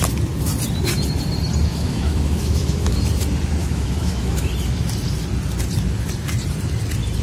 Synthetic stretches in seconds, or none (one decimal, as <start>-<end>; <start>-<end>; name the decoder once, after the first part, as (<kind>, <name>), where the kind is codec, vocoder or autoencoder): 1.7-3.0 (autoencoder, DAC-VAE); 3.6-4.5